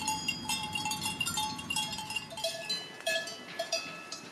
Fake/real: fake